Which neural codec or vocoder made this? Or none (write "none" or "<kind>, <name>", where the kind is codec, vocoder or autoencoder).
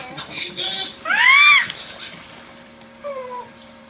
vocoder, BigVGAN v2